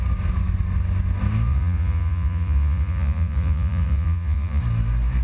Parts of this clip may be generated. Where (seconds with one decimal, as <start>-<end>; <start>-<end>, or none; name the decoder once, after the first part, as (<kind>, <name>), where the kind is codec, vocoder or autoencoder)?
1.5-4.6 (vocoder, Vocos)

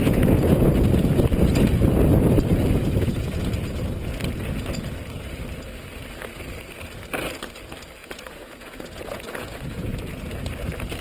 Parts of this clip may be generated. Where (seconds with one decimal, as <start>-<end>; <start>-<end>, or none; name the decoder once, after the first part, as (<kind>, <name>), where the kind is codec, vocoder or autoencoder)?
0.0-0.7 (vocoder, Vocos); 2.8-3.5; 8.0-10.2

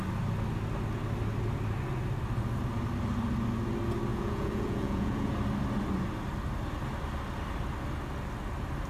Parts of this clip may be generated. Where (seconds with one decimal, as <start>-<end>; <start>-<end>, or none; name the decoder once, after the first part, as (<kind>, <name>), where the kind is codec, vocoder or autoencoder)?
4.1-5.3 (vocoder, Vocos)